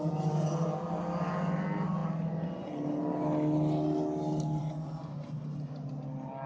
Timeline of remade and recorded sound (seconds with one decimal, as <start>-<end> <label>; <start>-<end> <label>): 0.0-6.5 recorded